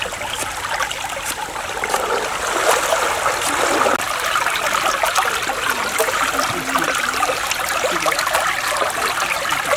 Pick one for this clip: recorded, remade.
recorded